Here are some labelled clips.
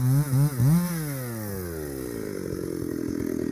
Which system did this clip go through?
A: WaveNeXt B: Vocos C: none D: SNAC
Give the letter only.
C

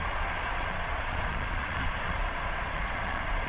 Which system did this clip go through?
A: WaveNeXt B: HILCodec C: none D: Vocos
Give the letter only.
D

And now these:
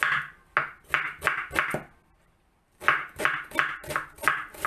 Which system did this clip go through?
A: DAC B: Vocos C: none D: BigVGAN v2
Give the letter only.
C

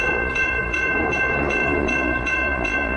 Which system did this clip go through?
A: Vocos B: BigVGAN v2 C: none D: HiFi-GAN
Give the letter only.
A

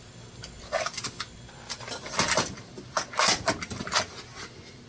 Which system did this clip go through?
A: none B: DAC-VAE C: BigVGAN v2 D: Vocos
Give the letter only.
A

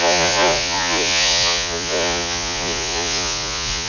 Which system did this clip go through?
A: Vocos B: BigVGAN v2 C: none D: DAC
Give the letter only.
A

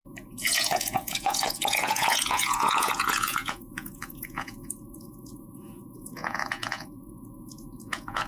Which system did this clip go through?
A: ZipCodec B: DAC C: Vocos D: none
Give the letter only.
C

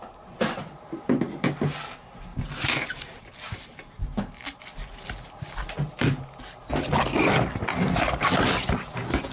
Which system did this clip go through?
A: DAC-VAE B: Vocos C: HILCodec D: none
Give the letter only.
D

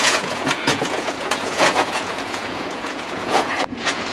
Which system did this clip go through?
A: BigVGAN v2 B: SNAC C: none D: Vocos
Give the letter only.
D